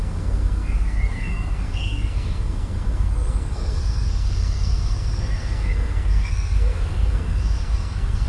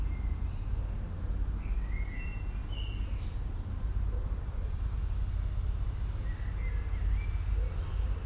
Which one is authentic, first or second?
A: second